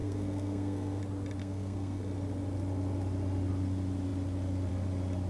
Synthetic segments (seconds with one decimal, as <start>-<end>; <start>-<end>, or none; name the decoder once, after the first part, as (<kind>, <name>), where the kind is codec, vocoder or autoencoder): 0.0-1.0 (codec, SNAC); 1.4-2.0

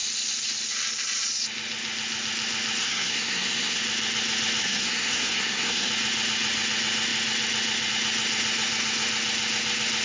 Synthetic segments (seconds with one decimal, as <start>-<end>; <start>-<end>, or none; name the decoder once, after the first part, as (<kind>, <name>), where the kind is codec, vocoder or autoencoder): 2.8-3.8 (codec, SNAC); 4.6-5.9

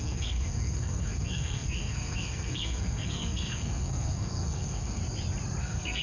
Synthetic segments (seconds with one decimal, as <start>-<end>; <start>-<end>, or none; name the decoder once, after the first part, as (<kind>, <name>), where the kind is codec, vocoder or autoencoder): 0.0-5.0 (codec, SNAC); 5.6-6.0

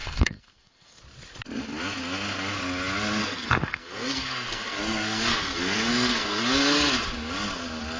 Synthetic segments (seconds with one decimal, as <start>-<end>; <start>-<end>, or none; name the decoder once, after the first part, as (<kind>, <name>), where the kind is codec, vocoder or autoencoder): 0.0-1.0 (codec, SNAC); 3.2-6.4

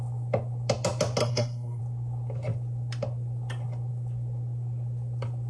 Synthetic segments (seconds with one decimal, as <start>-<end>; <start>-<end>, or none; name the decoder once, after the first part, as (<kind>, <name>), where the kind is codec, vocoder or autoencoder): 1.2-1.8 (codec, SNAC)